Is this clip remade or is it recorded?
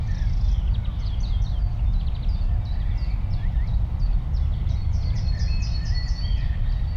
recorded